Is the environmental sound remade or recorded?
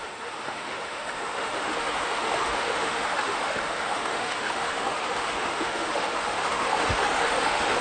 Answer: remade